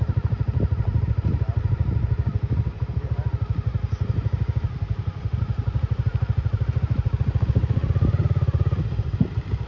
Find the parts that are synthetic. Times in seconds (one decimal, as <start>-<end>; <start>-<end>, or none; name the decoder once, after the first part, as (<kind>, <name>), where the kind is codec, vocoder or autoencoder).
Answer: none